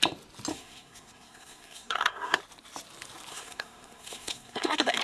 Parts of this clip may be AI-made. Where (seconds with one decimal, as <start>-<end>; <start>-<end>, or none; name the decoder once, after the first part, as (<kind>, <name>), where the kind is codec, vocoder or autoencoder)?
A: 0.5-2.4 (codec, SNAC); 3.3-5.0